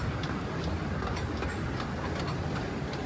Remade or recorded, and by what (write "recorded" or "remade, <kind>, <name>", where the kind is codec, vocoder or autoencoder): recorded